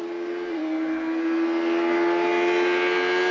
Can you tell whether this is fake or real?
real